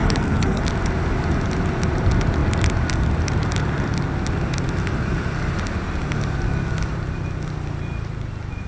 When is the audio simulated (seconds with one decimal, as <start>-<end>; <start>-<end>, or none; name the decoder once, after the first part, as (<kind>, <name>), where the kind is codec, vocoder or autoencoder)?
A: 0.0-0.6 (codec, SNAC)